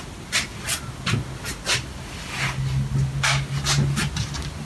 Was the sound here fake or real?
real